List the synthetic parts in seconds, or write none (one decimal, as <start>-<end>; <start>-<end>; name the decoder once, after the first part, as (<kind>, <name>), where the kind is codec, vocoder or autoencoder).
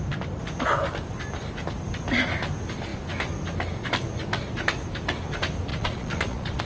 5.7-6.6 (vocoder, Vocos)